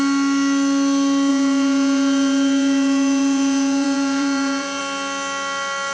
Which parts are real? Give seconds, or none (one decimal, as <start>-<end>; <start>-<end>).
0.0-1.3; 4.8-5.9